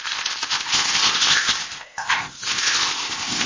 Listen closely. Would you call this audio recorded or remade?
remade